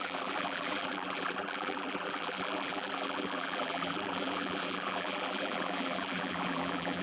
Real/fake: fake